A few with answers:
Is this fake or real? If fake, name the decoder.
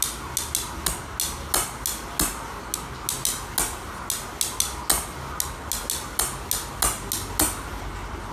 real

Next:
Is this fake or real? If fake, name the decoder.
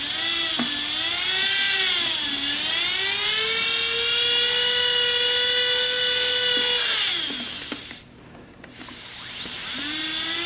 real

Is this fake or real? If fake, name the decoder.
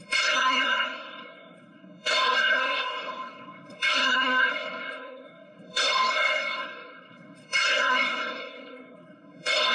fake, codec, SNAC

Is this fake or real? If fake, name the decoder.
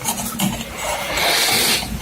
real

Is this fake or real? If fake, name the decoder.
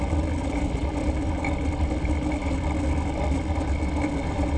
real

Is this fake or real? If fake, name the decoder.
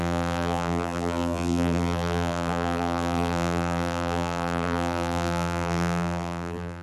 fake, vocoder, BigVGAN v2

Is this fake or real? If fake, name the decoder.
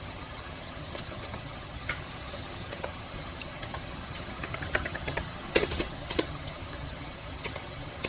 fake, vocoder, HiFi-GAN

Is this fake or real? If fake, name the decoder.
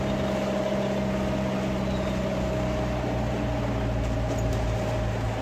real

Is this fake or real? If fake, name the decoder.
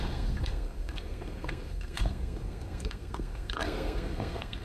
fake, codec, SNAC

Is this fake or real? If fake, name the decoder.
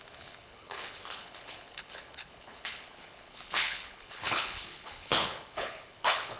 fake, codec, HILCodec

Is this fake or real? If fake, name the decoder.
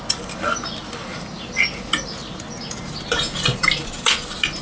real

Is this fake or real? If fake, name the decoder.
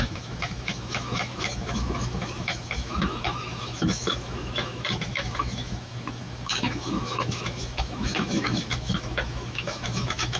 fake, autoencoder, DAC-VAE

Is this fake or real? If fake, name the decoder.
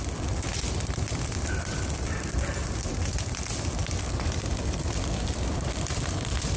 real